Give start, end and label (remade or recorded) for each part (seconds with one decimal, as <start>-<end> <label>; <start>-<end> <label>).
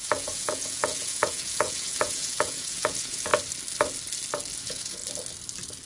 0.0-3.3 remade; 3.3-4.6 recorded; 4.6-5.0 remade; 5.0-5.9 recorded